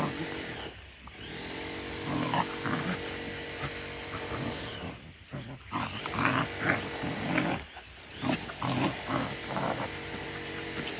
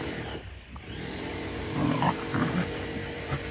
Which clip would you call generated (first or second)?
second